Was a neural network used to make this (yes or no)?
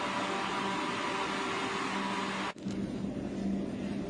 no